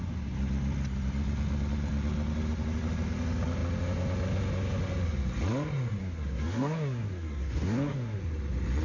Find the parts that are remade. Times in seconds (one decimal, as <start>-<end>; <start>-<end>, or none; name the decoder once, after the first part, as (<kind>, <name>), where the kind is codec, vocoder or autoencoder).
6.0-8.2 (codec, SNAC)